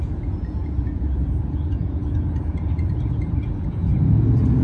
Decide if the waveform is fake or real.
fake